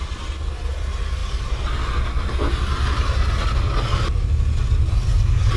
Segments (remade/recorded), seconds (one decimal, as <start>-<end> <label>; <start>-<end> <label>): 0.0-5.6 recorded